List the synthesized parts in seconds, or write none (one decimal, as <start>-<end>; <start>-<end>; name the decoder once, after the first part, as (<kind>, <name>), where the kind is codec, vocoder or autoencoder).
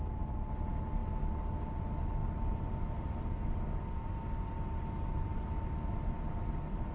none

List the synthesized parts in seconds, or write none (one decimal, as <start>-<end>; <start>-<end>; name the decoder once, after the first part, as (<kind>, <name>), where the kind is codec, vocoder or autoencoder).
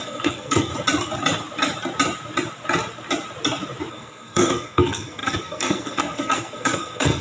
0.0-0.7 (codec, SNAC); 3.9-7.2